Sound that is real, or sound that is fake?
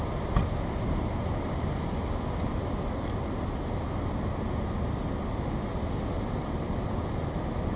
real